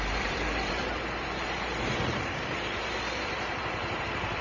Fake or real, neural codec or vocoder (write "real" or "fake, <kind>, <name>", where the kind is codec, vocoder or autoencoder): fake, vocoder, BigVGAN v2